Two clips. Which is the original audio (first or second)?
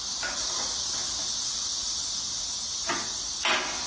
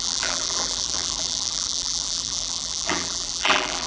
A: first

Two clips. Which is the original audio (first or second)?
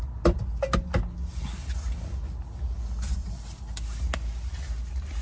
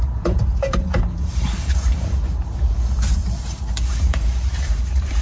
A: first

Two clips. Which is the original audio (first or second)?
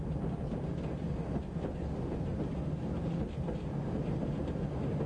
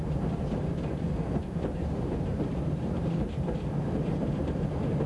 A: first